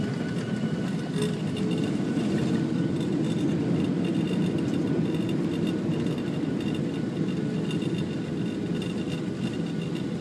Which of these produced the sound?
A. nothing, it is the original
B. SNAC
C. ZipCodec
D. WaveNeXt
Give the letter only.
A